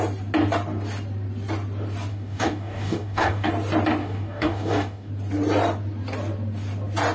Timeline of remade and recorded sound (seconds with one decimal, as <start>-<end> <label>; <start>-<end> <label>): 0.0-2.1 recorded; 2.1-3.5 remade; 3.5-4.0 recorded; 4.0-5.1 remade; 5.1-7.1 recorded